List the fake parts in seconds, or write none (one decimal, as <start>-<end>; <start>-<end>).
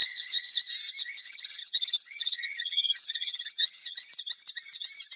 0.0-0.6; 1.0-4.1